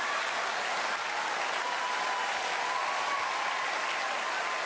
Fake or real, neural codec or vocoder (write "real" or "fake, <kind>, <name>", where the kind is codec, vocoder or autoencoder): real